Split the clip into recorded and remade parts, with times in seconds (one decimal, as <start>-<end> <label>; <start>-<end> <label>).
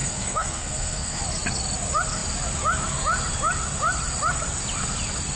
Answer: 0.0-1.2 remade; 1.2-5.4 recorded